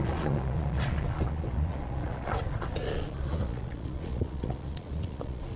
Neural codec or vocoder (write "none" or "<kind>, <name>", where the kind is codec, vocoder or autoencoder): vocoder, Vocos